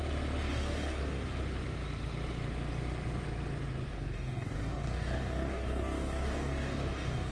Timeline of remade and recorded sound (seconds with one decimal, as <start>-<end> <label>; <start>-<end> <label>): 0.0-0.5 recorded; 0.5-1.4 remade; 1.4-3.9 recorded; 3.9-7.3 remade